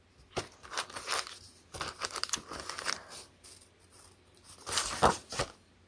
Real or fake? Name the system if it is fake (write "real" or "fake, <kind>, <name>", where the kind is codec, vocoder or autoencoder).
real